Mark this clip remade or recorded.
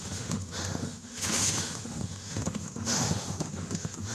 remade